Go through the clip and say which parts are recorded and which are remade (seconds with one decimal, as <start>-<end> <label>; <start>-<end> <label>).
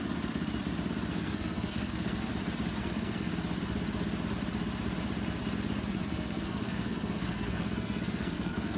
0.0-1.1 recorded; 1.1-2.3 remade; 2.3-2.8 recorded; 2.8-3.3 remade; 3.3-5.9 recorded; 5.9-8.8 remade